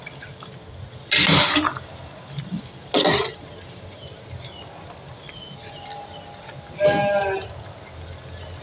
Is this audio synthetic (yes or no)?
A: no